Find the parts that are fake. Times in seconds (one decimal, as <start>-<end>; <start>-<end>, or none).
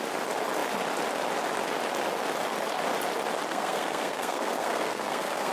3.5-5.5